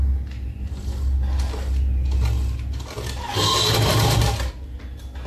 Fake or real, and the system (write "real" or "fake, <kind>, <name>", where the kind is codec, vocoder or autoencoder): real